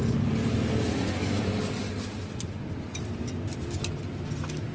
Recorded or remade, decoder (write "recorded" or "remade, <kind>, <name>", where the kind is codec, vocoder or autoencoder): recorded